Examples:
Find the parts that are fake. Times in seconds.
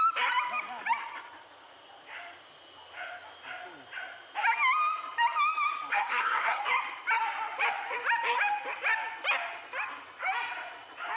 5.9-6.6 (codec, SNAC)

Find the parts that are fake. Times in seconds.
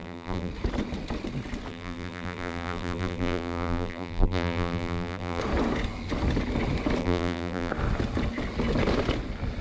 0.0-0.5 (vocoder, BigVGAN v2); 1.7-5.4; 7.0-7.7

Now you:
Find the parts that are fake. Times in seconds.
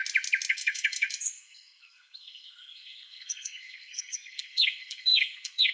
0.5-5.7 (codec, SNAC)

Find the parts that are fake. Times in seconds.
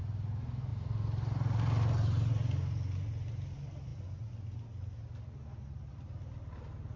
none